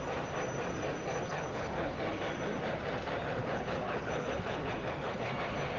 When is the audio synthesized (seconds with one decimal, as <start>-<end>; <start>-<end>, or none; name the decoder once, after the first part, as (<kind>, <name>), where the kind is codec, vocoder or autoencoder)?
1.3-2.0 (codec, HILCodec); 3.4-5.3